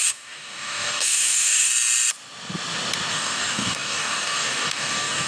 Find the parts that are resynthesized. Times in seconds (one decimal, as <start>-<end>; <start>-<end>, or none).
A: 0.0-1.7; 3.1-5.3